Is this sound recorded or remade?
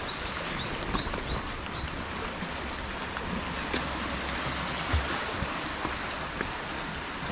recorded